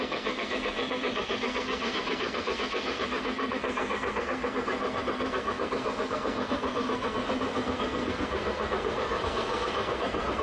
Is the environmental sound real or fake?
fake